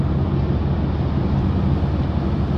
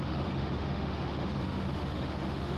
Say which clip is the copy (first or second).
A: second